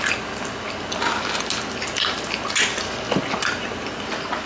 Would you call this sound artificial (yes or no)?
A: no